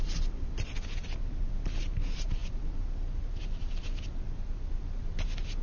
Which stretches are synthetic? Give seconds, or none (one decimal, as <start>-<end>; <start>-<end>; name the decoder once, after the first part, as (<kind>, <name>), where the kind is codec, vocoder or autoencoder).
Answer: none